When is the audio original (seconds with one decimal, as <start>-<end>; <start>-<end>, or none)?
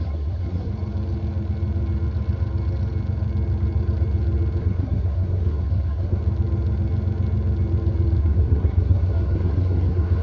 0.7-4.6; 6.2-8.2